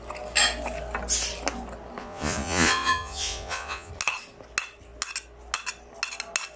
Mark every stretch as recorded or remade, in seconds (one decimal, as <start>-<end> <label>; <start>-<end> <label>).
0.0-2.0 recorded; 2.0-3.9 remade; 3.9-6.6 recorded